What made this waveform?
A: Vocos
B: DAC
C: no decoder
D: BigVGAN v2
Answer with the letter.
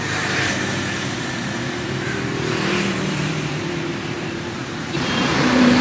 D